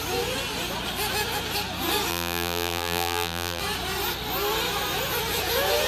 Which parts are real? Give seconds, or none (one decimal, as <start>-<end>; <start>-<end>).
0.0-2.1; 3.6-5.9